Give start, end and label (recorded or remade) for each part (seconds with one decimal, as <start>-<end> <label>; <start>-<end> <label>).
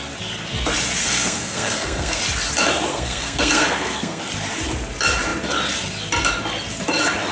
0.0-1.0 recorded; 1.0-2.2 remade; 2.2-2.9 recorded; 2.9-4.2 remade; 4.2-7.3 recorded